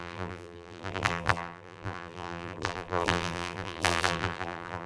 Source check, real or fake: fake